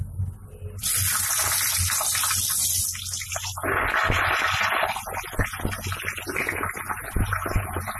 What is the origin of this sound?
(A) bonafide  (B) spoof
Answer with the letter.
A